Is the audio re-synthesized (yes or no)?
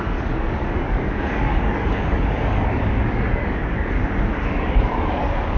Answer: yes